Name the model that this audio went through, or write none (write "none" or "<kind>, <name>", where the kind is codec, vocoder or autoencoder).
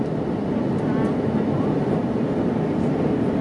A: none